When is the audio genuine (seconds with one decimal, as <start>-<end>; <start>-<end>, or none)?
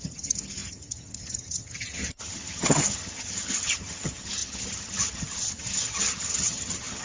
none